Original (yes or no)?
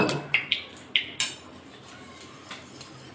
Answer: yes